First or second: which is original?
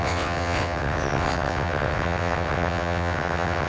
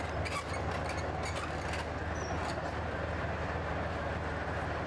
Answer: second